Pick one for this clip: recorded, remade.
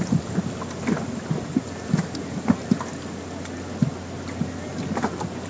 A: recorded